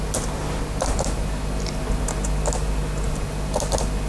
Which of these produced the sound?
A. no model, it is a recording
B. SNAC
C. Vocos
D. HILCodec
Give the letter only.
A